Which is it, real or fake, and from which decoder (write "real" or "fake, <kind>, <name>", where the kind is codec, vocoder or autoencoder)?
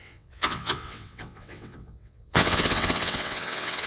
fake, vocoder, WaveNeXt